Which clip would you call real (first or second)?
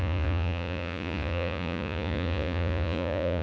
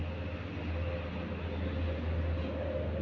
second